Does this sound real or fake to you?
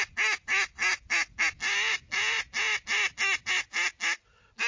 real